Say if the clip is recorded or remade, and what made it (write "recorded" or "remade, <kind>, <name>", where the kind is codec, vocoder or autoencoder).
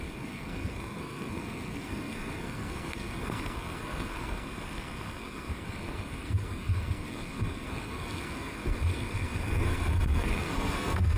remade, codec, SNAC